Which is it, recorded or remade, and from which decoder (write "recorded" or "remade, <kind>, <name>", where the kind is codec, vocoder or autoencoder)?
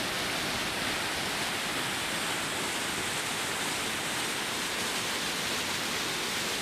recorded